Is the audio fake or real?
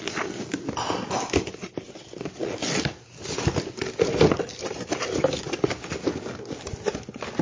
real